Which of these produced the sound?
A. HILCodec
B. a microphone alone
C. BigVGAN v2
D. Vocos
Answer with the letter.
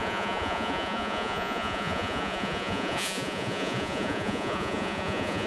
D